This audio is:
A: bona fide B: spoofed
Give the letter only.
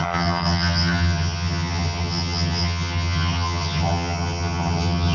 B